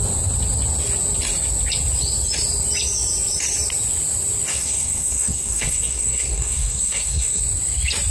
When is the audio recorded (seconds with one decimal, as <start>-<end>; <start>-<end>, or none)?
0.0-4.5; 7.4-8.1